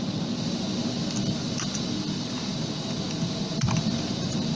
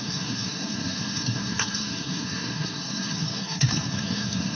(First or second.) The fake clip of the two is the second